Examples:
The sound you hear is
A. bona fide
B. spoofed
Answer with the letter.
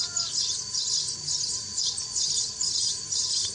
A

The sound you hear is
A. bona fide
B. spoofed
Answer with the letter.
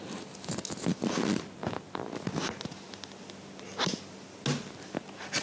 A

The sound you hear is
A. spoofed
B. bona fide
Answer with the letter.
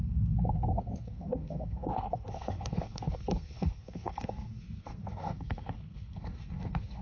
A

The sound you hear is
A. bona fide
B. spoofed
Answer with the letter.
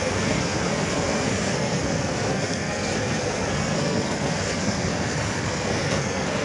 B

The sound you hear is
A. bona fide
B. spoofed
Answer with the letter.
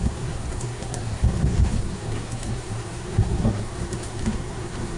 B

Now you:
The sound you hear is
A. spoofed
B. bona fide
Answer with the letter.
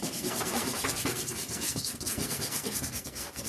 A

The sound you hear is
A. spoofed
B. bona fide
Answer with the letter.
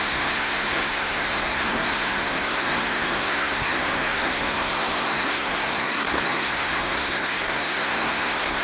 A